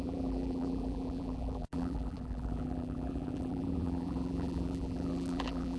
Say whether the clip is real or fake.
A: fake